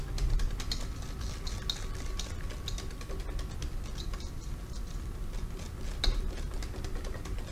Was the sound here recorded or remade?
recorded